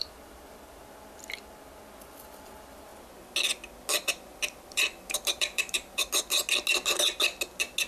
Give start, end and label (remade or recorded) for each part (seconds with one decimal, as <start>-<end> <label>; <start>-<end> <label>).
0.0-0.8 remade; 0.8-4.3 recorded; 4.3-6.1 remade; 6.1-7.9 recorded